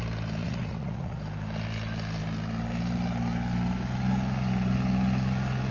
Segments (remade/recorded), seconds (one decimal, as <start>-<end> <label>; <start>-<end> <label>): 0.0-0.4 recorded; 0.4-1.2 remade; 1.2-5.7 recorded